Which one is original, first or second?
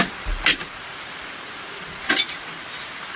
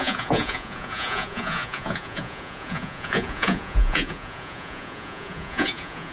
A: first